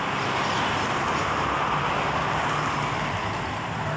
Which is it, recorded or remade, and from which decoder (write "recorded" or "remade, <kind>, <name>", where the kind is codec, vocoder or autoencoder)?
recorded